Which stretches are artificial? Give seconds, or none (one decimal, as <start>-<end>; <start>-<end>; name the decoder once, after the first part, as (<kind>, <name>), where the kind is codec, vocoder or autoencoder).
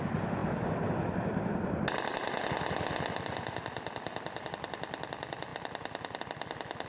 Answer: none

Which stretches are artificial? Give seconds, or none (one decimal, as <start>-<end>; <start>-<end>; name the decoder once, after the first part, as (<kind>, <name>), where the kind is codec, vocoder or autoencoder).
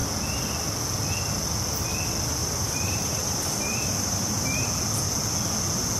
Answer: 2.4-4.7 (vocoder, BigVGAN v2)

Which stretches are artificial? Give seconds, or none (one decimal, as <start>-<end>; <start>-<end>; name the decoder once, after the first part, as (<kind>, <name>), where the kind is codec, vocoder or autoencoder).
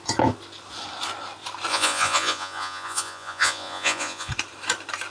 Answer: 1.7-4.3 (vocoder, Vocos)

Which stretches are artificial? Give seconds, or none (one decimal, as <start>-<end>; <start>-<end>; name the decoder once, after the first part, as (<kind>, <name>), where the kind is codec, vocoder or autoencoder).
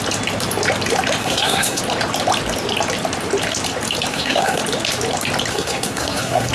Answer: 1.2-1.8 (codec, SNAC); 4.1-4.6; 5.5-6.5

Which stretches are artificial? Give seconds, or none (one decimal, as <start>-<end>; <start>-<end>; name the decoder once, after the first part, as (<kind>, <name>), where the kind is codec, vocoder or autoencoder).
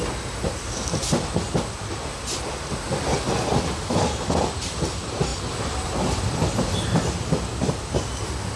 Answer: 5.3-7.7 (vocoder, BigVGAN v2)